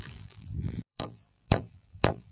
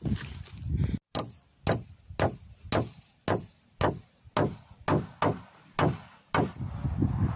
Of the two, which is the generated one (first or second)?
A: first